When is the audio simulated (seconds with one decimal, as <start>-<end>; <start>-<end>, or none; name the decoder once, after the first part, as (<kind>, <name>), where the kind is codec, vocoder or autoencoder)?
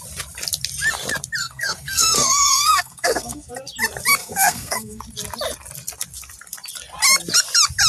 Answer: 1.4-3.5 (codec, SNAC); 4.2-5.0